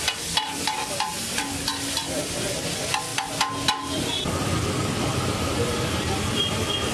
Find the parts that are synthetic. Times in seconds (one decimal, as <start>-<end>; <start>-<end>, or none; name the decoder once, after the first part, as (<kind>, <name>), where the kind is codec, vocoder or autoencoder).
none